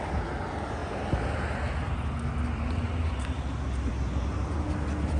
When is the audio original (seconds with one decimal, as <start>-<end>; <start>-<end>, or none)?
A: 0.0-5.2